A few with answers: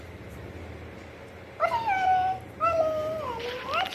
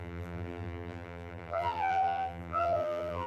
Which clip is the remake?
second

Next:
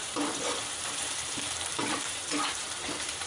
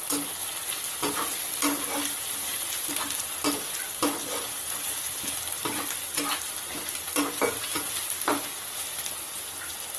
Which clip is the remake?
first